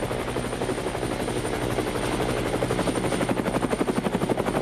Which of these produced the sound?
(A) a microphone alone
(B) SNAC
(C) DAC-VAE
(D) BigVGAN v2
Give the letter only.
A